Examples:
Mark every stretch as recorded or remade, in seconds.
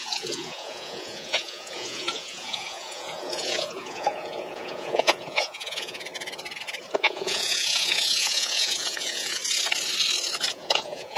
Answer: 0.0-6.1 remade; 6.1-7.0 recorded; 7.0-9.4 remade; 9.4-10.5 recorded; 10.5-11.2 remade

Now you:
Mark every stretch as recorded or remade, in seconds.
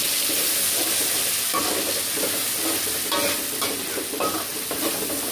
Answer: 0.0-5.3 recorded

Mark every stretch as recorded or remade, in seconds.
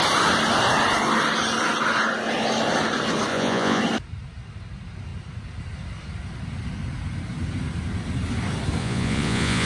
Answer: 0.0-3.3 recorded; 3.3-3.8 remade; 3.8-8.8 recorded; 8.8-9.7 remade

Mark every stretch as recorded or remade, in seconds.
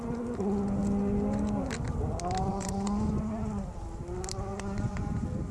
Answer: 0.0-2.5 recorded; 2.5-3.2 remade; 3.2-4.5 recorded; 4.5-5.1 remade; 5.1-5.5 recorded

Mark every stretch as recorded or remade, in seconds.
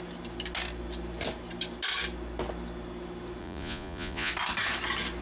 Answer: 0.0-3.4 recorded; 3.4-4.3 remade; 4.3-5.2 recorded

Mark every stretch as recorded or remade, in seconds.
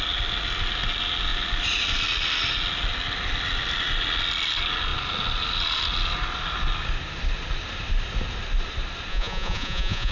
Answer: 0.0-9.1 recorded; 9.1-10.1 remade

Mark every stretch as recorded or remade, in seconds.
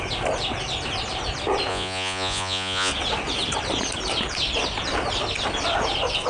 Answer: 0.0-1.7 recorded; 1.7-2.9 remade; 2.9-6.3 recorded